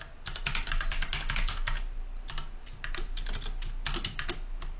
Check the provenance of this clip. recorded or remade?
recorded